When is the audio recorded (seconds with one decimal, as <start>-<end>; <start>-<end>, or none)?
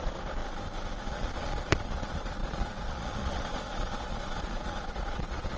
0.4-1.1